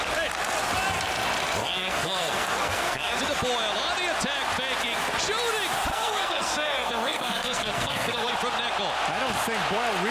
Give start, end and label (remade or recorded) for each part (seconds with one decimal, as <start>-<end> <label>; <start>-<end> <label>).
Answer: 0.0-1.6 recorded; 1.6-3.2 remade; 3.2-5.9 recorded; 5.9-8.3 remade; 8.3-10.1 recorded